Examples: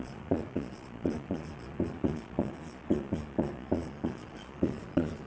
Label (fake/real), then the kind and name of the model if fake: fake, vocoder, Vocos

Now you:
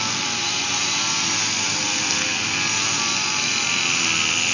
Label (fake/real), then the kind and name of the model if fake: real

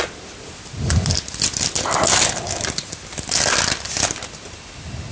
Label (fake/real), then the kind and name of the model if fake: real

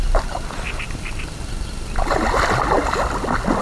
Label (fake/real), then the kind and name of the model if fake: real